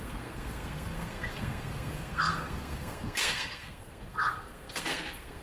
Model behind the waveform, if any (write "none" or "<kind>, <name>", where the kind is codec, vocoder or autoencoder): codec, SNAC